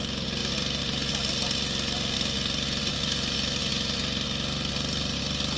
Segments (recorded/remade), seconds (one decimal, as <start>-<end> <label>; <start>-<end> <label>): 0.0-5.6 recorded